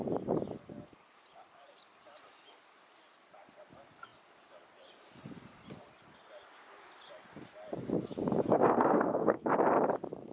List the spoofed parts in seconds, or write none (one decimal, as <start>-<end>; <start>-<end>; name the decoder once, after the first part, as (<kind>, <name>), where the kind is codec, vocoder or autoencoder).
8.5-9.5 (codec, SNAC)